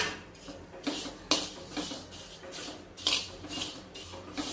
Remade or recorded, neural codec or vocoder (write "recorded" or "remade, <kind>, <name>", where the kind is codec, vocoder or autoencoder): recorded